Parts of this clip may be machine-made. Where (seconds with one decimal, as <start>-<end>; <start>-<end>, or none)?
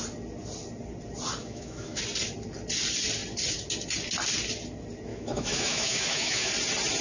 1.4-2.0; 5.1-6.5